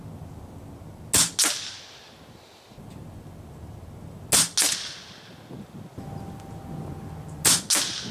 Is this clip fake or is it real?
real